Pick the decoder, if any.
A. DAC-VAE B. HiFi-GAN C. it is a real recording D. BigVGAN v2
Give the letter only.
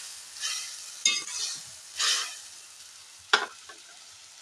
C